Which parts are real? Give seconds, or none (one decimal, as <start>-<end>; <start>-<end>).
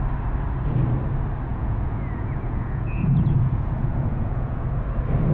0.0-1.5; 4.7-5.3